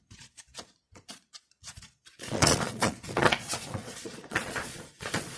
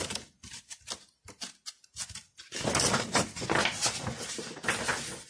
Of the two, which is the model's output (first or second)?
first